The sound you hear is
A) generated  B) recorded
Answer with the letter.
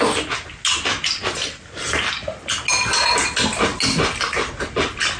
B